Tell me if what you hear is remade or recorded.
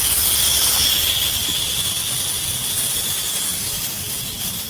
recorded